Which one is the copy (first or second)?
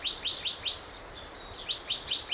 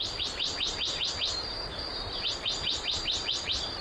second